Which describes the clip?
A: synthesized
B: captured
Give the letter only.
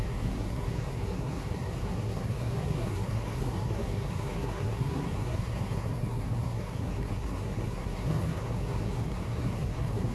A